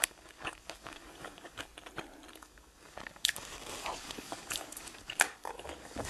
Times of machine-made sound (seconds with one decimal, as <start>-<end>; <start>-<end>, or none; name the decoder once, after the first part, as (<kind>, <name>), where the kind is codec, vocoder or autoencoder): 0.0-1.7 (codec, DAC); 2.3-6.1